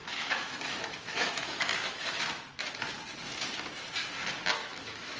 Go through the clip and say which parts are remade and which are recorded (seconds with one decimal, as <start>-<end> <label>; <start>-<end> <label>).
0.0-2.7 remade; 2.7-4.6 recorded; 4.6-5.2 remade